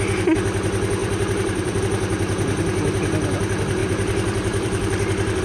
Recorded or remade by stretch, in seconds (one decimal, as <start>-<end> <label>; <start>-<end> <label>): 0.0-1.0 recorded; 1.0-1.8 remade; 1.8-3.8 recorded; 3.8-5.4 remade